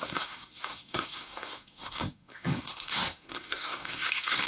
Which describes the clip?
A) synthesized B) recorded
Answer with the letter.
A